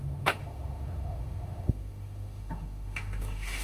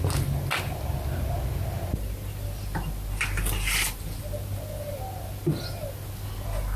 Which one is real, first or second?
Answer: second